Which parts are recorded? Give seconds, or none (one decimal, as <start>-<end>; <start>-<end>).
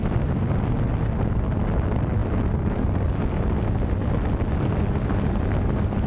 0.0-6.1